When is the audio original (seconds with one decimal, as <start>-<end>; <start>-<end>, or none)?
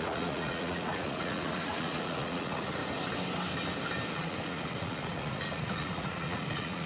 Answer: 2.8-4.1